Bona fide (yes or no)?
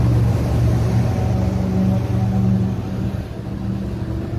yes